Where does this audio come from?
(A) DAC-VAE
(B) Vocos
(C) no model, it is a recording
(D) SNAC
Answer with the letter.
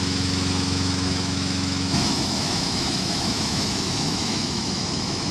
A